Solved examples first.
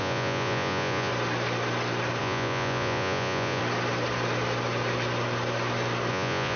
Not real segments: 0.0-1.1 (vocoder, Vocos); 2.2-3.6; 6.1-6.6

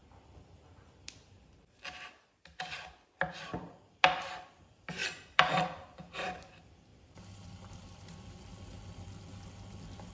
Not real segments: 5.0-6.5 (vocoder, BigVGAN v2); 6.9-8.3

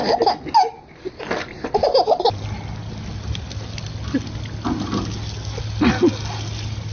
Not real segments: none

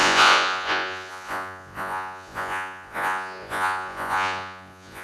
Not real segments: 0.0-5.0 (vocoder, Vocos)

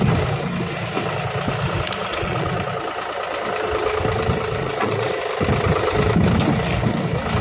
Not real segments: 2.1-2.7 (vocoder, Vocos); 4.6-5.2

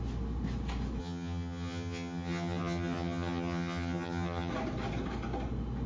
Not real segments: 1.0-4.5 (vocoder, HiFi-GAN)

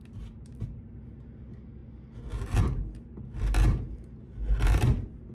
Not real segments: none

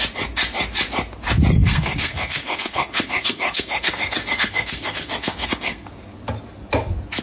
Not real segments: 1.6-5.9 (codec, SNAC)